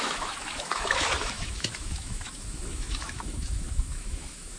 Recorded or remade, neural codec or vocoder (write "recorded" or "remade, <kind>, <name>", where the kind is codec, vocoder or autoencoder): remade, autoencoder, DAC-VAE